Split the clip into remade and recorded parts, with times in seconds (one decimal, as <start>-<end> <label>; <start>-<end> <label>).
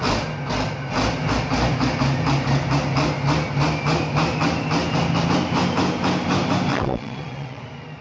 0.0-6.7 recorded; 6.7-7.6 remade; 7.6-8.0 recorded